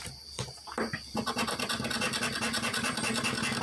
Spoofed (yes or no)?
no